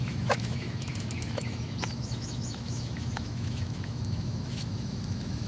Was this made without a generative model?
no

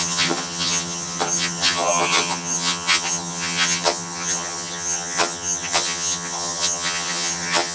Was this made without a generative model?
no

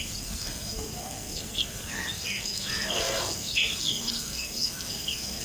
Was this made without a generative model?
no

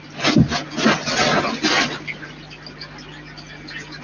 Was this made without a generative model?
yes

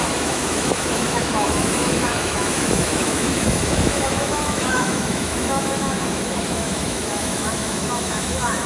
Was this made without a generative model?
no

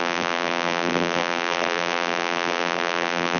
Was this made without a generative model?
no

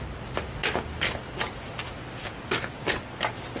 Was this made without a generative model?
yes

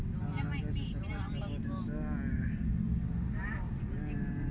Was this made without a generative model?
yes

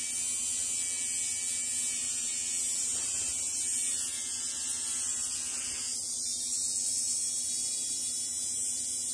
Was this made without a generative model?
yes